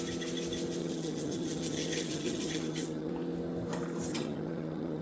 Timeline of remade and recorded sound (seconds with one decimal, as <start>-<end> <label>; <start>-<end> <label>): 0.0-0.8 recorded; 0.8-3.1 remade; 3.1-4.1 recorded; 4.1-5.0 remade